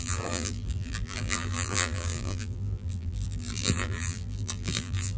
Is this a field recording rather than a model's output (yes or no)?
no